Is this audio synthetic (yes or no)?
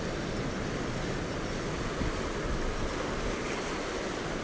no